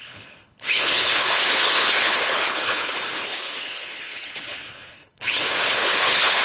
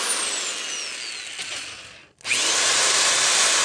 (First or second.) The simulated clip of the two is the first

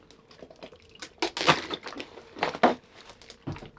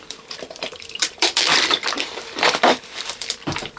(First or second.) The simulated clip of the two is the second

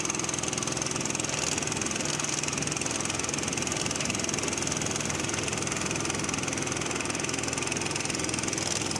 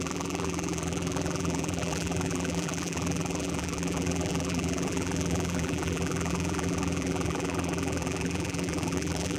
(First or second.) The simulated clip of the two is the second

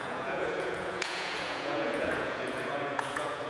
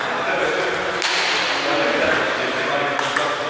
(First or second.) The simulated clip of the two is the first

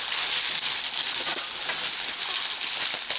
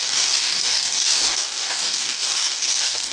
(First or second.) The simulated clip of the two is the second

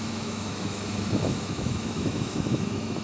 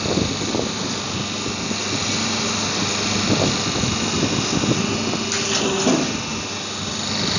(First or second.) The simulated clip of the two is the first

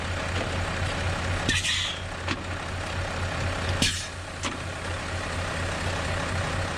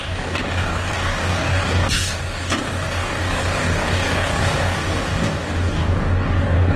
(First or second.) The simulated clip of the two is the second